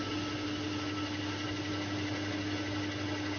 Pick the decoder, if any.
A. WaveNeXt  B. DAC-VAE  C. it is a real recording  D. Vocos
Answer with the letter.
C